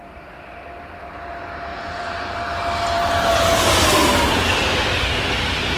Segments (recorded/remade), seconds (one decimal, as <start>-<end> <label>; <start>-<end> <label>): 0.0-1.7 recorded; 1.7-2.3 remade; 2.3-5.8 recorded